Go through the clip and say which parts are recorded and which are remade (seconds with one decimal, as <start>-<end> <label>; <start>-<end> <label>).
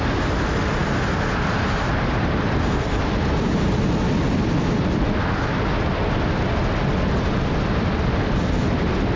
0.0-9.2 recorded